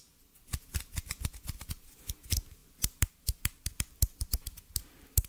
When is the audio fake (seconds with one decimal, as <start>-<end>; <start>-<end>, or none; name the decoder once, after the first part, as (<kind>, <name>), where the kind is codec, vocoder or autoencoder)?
none